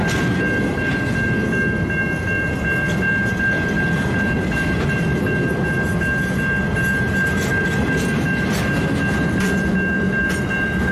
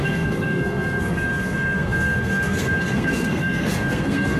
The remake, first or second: second